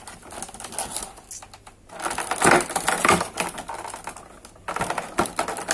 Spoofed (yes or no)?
no